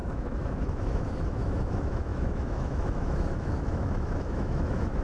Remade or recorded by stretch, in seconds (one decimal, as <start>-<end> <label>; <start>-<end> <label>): 0.0-5.0 remade